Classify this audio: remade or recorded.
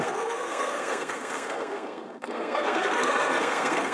remade